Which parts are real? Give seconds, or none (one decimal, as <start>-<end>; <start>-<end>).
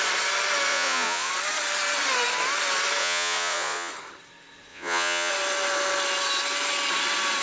0.0-0.7; 1.3-3.0; 3.9-4.7; 5.3-7.4